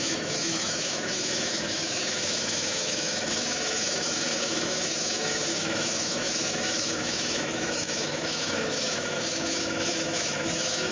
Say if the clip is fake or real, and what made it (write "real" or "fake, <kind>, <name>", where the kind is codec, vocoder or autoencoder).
fake, autoencoder, DAC-VAE